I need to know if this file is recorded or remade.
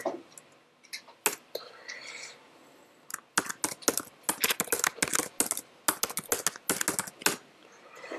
recorded